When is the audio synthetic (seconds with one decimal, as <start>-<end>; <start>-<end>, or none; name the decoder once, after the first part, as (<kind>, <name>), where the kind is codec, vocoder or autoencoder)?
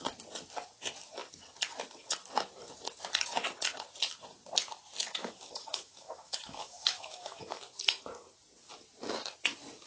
5.0-7.6 (autoencoder, DAC-VAE)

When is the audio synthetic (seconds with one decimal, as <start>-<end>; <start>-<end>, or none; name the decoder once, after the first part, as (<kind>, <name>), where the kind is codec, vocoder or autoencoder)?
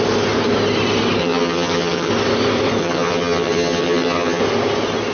1.2-2.1 (vocoder, HiFi-GAN); 2.8-4.4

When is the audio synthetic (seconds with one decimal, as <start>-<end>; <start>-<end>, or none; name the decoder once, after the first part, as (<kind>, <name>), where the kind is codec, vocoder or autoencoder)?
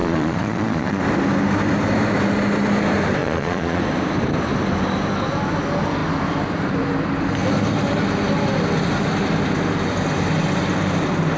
0.0-1.0 (vocoder, Vocos); 3.2-3.8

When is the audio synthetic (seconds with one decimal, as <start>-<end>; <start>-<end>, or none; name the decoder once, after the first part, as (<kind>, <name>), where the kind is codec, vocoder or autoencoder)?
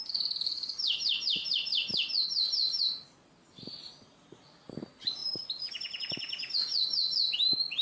none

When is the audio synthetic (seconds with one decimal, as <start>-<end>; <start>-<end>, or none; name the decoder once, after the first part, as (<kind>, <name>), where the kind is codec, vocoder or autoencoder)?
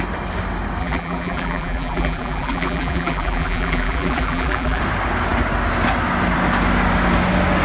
0.8-4.8 (vocoder, BigVGAN v2)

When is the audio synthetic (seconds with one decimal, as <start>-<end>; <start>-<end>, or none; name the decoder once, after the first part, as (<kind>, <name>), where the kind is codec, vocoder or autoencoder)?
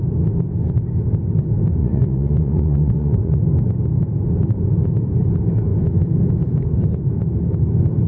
1.8-3.4 (vocoder, Vocos)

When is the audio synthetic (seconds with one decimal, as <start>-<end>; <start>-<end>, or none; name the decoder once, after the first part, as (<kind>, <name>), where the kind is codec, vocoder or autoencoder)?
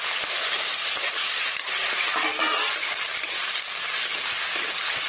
0.0-2.8 (vocoder, BigVGAN v2); 3.6-5.1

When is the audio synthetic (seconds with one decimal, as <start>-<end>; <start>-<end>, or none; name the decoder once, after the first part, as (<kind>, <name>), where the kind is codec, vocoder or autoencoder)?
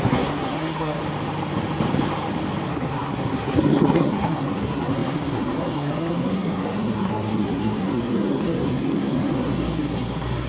0.0-1.0 (codec, SNAC); 2.7-10.5